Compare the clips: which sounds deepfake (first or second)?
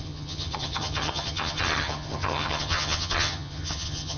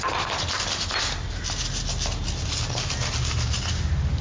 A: first